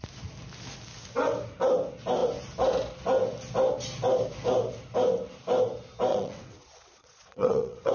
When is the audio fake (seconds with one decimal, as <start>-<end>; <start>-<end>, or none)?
6.1-7.9